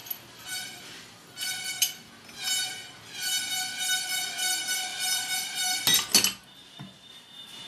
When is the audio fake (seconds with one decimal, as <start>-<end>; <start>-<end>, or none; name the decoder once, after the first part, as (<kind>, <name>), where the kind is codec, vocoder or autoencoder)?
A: 0.0-2.1 (vocoder, BigVGAN v2); 4.9-5.5